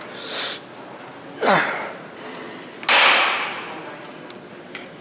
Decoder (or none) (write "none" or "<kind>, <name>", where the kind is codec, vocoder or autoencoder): none